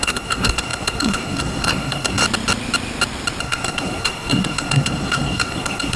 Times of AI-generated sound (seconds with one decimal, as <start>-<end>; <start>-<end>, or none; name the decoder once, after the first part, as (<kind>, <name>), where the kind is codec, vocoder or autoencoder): 0.0-2.2 (codec, SNAC); 3.4-6.0